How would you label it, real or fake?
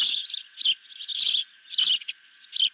real